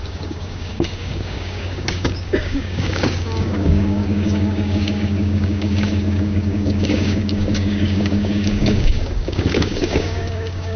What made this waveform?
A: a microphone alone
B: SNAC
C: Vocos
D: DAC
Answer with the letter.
D